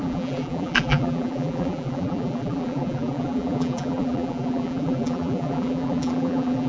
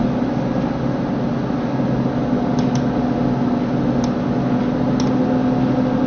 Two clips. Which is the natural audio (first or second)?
second